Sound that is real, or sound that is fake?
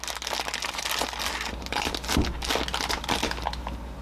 real